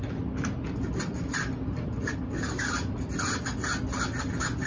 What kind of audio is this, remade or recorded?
recorded